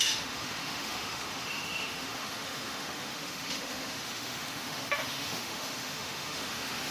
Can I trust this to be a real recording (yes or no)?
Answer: no